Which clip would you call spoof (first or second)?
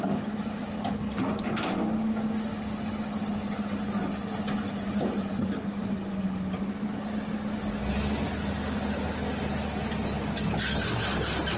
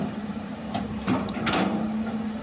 second